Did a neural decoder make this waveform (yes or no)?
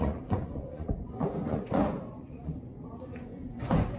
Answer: yes